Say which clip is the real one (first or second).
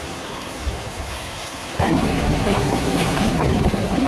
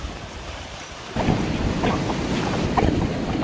second